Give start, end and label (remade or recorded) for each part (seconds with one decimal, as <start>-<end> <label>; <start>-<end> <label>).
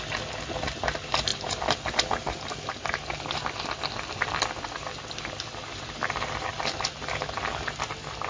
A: 0.0-5.7 recorded; 5.7-7.1 remade; 7.1-8.3 recorded